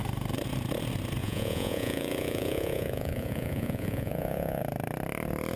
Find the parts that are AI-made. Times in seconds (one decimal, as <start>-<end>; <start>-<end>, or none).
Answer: 1.2-4.6